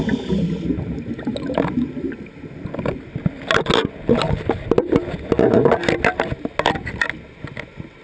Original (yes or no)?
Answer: yes